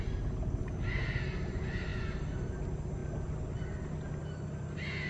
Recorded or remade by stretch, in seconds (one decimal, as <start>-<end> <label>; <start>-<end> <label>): 0.0-5.1 recorded